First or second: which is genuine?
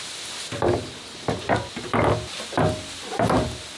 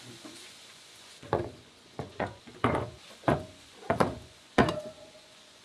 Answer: first